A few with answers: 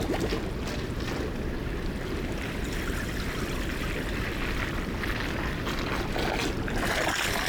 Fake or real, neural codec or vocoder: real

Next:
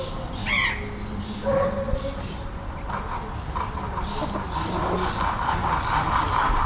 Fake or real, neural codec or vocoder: real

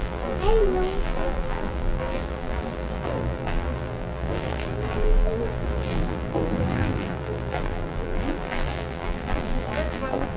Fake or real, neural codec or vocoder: fake, vocoder, BigVGAN v2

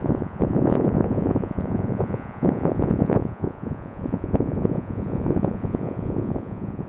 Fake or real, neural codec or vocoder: fake, vocoder, Vocos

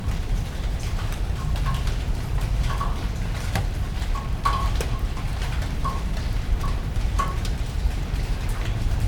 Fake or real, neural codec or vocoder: fake, vocoder, BigVGAN v2